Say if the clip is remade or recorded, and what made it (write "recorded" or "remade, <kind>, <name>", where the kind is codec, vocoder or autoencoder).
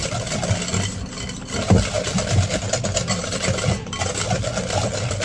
recorded